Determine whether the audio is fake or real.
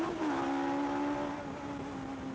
real